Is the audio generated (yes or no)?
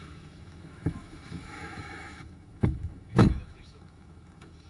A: yes